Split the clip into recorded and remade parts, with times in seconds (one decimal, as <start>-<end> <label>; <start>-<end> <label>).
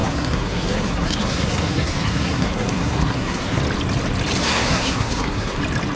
0.0-3.6 remade; 3.6-4.4 recorded; 4.4-5.6 remade; 5.6-6.0 recorded